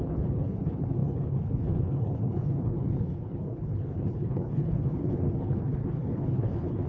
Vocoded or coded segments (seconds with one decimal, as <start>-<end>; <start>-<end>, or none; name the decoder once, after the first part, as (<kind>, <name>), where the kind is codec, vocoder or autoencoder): 0.0-6.9 (codec, HILCodec)